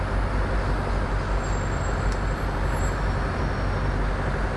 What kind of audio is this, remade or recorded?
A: recorded